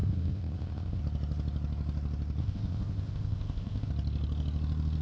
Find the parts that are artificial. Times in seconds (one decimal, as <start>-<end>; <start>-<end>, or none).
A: 0.0-1.0; 2.4-3.9